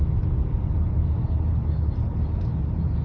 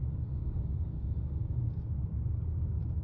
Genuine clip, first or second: first